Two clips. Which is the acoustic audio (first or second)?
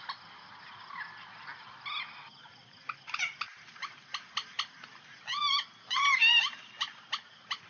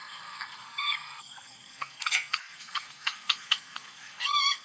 first